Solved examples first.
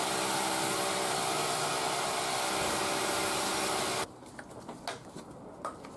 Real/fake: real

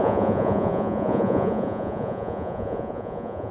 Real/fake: fake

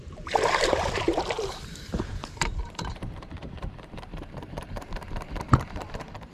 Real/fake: fake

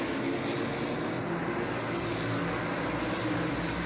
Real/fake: real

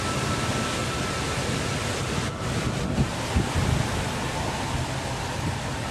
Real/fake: real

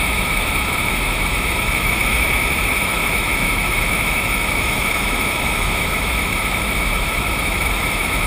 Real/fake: fake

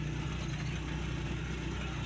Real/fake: real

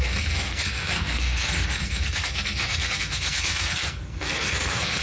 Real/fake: fake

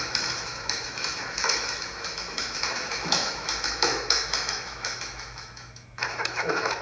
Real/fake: fake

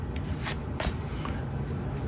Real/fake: real